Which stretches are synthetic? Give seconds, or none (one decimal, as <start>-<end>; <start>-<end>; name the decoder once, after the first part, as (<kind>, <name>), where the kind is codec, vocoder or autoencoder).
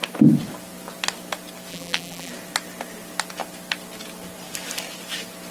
1.7-2.3 (vocoder, BigVGAN v2)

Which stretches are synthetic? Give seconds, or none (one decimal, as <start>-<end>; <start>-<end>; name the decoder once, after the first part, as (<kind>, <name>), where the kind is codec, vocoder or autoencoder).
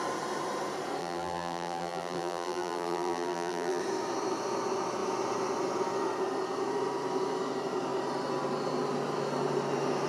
1.0-3.8 (vocoder, BigVGAN v2)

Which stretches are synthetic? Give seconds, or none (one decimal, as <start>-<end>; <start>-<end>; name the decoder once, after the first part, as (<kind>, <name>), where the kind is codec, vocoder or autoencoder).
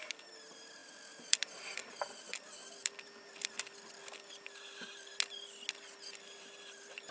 0.8-5.1 (vocoder, BigVGAN v2)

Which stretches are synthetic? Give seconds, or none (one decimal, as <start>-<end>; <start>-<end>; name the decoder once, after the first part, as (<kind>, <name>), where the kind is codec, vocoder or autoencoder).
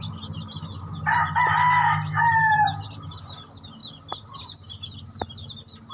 3.8-4.4 (vocoder, BigVGAN v2)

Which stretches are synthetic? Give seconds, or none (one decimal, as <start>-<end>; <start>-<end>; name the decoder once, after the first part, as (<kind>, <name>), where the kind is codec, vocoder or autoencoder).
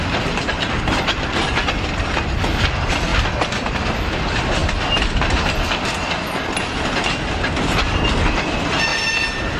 none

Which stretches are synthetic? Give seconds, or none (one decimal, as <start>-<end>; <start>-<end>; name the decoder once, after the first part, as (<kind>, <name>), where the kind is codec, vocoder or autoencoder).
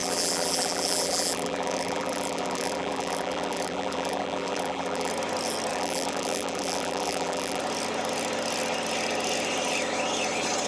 0.0-5.1 (vocoder, BigVGAN v2); 5.7-7.6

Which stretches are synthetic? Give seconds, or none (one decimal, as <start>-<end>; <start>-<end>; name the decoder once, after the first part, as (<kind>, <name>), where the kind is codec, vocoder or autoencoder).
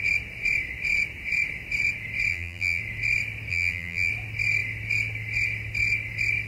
2.3-2.8 (vocoder, BigVGAN v2); 3.5-4.1